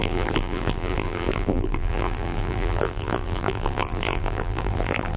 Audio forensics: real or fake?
fake